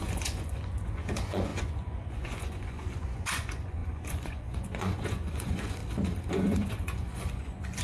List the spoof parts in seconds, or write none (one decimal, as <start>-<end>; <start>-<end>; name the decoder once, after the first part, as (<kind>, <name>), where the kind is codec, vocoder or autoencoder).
0.0-5.8 (vocoder, Vocos); 6.3-7.8